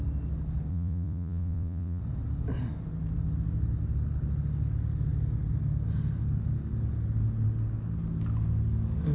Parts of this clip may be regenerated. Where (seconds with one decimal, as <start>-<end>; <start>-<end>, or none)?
0.7-2.0